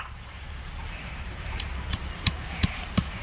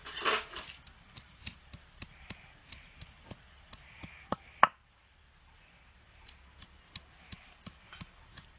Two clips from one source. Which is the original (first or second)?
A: second